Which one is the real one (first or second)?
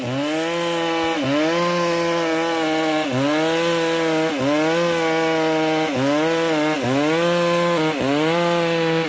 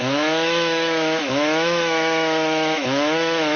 first